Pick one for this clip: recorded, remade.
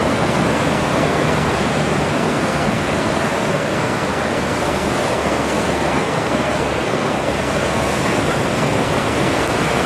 remade